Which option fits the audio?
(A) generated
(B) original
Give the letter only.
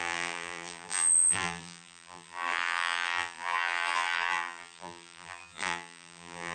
A